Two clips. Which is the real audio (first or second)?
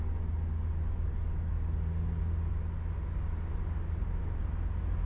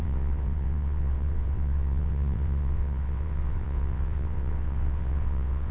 first